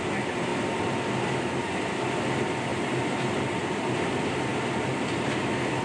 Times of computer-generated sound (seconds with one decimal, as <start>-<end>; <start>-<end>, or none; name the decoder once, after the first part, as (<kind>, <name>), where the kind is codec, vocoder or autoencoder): none